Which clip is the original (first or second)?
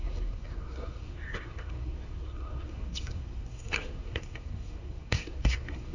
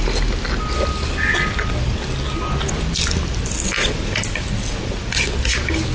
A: second